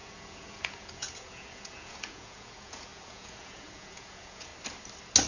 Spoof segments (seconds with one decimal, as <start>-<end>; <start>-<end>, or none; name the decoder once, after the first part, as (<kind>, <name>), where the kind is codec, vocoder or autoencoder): 0.0-4.5 (vocoder, Vocos)